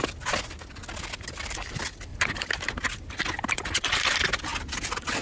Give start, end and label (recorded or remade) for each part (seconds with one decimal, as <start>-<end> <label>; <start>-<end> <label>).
0.0-0.8 remade; 0.8-1.3 recorded; 1.3-2.1 remade; 2.1-3.5 recorded; 3.5-4.5 remade; 4.5-5.2 recorded